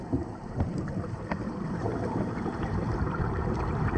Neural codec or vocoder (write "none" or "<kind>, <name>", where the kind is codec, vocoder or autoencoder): vocoder, BigVGAN v2